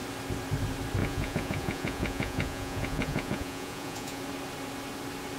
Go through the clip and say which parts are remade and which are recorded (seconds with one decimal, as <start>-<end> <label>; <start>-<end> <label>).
0.0-1.0 recorded; 1.0-4.2 remade; 4.2-5.4 recorded